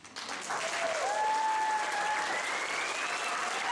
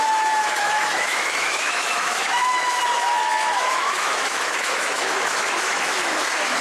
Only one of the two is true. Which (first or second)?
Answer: first